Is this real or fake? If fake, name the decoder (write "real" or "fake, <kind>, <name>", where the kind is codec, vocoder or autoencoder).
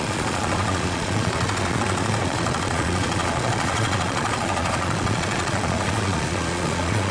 fake, vocoder, Vocos